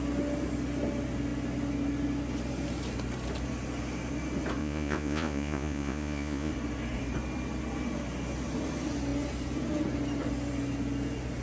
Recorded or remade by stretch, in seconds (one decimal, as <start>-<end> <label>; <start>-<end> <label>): 0.0-4.6 recorded; 4.6-6.5 remade; 6.5-11.4 recorded